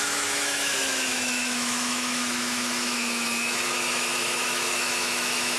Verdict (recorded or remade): remade